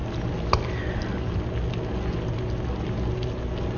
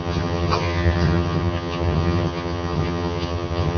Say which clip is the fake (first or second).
second